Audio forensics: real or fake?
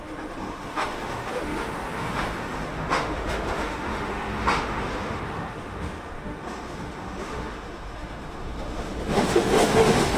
fake